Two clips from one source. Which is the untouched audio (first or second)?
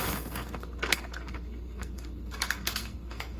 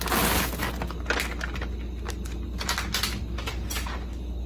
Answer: second